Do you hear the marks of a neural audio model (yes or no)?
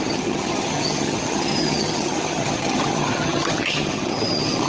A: yes